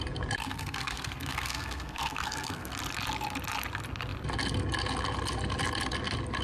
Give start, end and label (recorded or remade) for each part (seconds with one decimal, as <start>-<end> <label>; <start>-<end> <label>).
0.0-0.4 recorded; 0.4-2.7 remade; 2.7-6.4 recorded